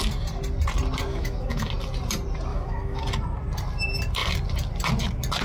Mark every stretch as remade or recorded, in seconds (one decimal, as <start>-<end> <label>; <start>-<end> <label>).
0.0-1.1 recorded; 1.1-1.7 remade; 1.7-2.5 recorded; 2.5-3.0 remade; 3.0-5.4 recorded